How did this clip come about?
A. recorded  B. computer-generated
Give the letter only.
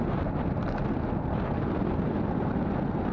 A